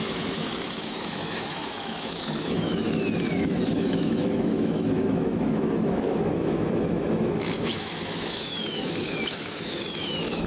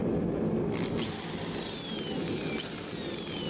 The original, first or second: second